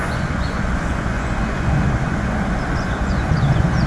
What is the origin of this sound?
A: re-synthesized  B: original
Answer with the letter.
A